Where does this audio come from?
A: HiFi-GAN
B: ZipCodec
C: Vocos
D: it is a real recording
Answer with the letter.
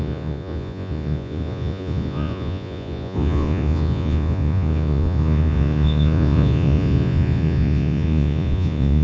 C